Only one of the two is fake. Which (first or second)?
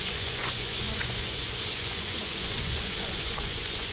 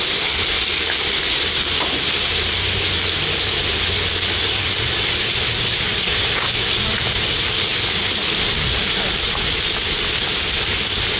first